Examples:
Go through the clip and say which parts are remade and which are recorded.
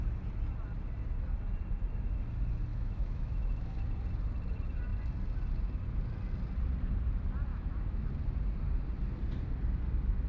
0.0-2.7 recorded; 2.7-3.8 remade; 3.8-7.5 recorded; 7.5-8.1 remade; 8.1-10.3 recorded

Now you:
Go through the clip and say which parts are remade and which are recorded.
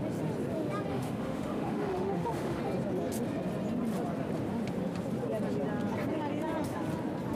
0.0-0.9 recorded; 0.9-2.6 remade; 2.6-7.4 recorded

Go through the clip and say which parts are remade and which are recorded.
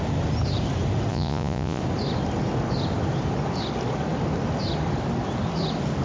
0.0-1.1 recorded; 1.1-1.8 remade; 1.8-6.0 recorded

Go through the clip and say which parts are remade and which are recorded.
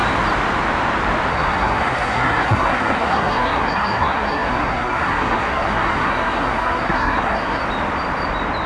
0.0-1.3 recorded; 1.3-7.6 remade; 7.6-8.7 recorded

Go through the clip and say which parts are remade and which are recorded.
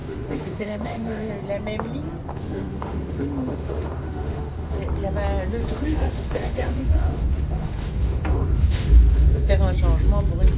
0.0-1.3 remade; 1.3-2.3 recorded; 2.3-4.8 remade; 4.8-5.6 recorded; 5.6-9.5 remade; 9.5-10.6 recorded